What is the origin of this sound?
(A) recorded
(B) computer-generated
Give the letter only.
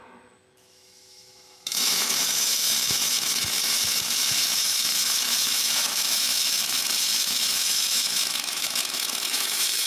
B